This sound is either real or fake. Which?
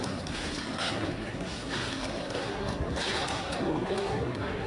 fake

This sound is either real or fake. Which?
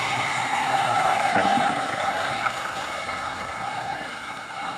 fake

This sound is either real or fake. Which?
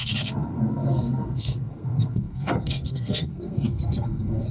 fake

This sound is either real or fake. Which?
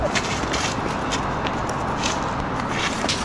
real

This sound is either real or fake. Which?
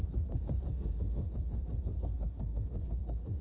fake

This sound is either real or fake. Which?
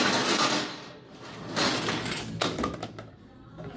real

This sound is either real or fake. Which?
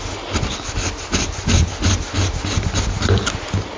real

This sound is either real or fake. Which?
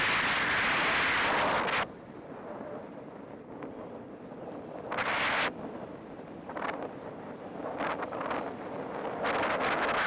real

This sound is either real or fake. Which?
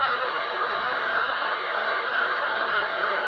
fake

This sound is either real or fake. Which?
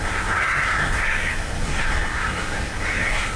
fake